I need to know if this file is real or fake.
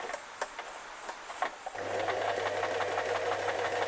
real